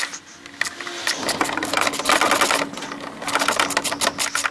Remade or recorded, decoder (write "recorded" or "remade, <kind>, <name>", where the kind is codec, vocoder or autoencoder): recorded